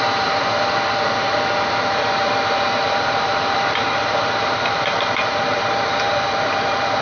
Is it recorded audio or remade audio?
remade